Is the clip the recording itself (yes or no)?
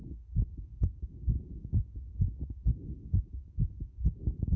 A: no